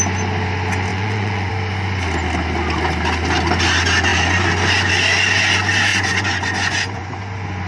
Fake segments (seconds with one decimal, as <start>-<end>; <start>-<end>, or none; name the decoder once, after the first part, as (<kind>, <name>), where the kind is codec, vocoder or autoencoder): 0.9-1.5 (vocoder, Vocos); 5.9-7.2